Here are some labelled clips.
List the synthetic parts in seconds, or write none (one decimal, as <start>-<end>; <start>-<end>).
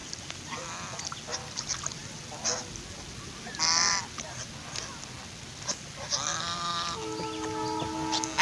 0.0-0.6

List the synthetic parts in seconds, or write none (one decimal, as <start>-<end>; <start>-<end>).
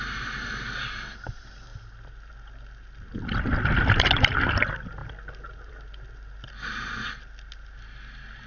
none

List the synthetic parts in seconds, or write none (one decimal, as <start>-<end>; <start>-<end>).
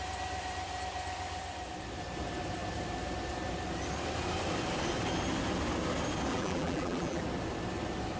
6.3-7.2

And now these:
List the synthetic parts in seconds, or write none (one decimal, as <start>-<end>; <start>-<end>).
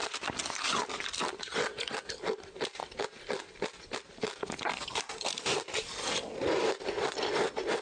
none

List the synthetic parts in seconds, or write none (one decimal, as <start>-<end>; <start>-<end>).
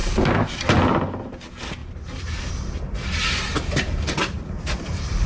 0.0-0.5; 1.8-2.5; 3.5-4.4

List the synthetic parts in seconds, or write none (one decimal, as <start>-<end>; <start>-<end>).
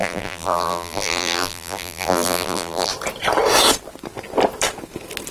0.0-2.9